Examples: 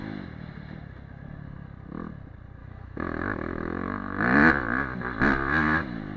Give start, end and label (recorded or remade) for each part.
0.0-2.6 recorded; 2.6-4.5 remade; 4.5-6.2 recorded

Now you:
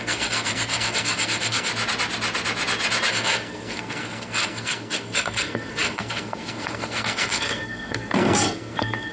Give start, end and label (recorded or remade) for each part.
0.0-1.7 remade; 1.7-3.1 recorded; 3.1-9.1 remade